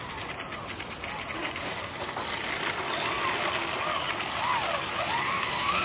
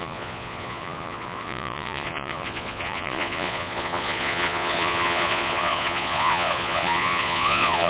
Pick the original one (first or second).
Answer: first